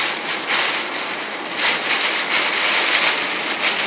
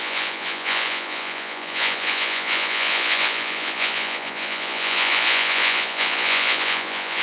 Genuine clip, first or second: first